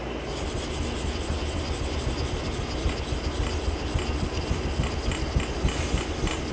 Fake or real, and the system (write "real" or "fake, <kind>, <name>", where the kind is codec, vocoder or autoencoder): real